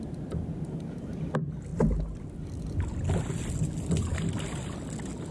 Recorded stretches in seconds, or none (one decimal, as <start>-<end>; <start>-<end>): 0.0-5.3